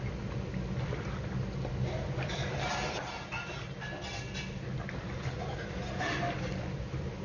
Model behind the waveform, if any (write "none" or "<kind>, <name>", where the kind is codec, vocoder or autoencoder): none